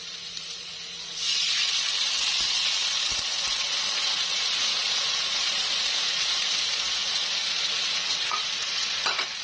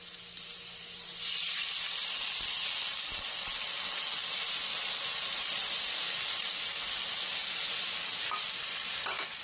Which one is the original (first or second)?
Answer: second